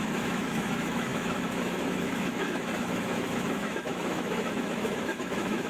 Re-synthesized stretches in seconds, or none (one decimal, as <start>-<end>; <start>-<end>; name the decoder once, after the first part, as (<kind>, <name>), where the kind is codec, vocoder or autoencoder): 0.0-5.7 (autoencoder, DAC-VAE)